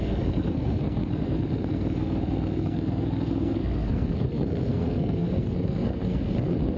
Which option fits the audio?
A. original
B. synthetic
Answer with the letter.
B